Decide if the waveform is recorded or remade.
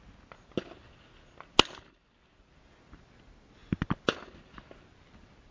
recorded